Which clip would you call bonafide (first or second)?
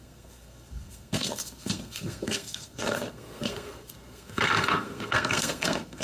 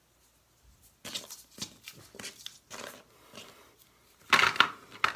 second